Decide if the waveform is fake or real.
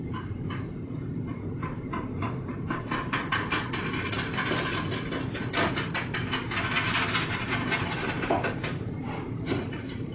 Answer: fake